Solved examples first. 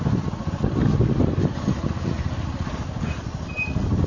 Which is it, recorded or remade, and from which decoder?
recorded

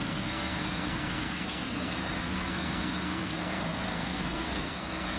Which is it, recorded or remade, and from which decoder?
remade, codec, SNAC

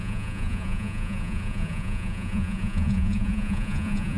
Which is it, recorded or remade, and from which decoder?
remade, vocoder, Vocos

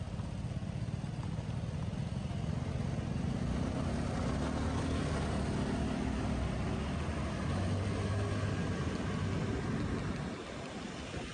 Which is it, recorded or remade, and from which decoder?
recorded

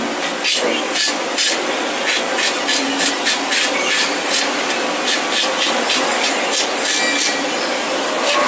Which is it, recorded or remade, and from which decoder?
recorded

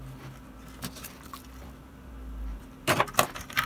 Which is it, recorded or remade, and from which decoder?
recorded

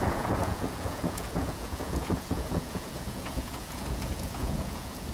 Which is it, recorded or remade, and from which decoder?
remade, vocoder, Vocos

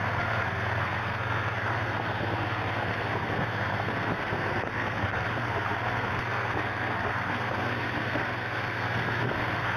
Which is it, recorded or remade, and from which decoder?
remade, codec, SNAC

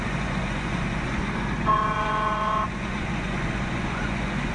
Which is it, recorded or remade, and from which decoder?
remade, vocoder, Vocos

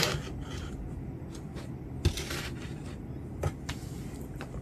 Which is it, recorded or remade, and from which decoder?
recorded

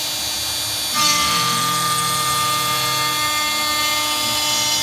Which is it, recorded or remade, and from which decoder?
recorded